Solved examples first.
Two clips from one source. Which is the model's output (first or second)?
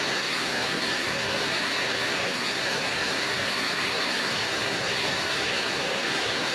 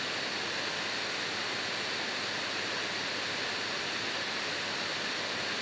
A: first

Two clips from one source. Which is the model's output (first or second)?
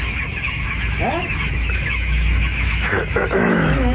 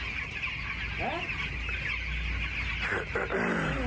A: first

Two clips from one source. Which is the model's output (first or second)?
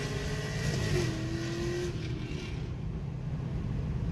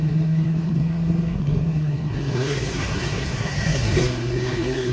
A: second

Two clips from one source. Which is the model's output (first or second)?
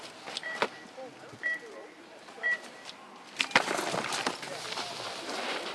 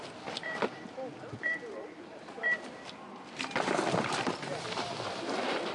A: second